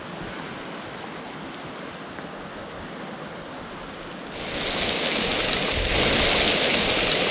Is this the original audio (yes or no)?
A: yes